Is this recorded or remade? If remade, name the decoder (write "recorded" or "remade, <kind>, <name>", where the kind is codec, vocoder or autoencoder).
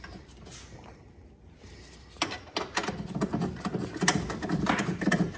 recorded